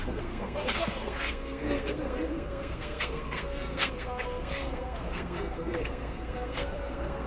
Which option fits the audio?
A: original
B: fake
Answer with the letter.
B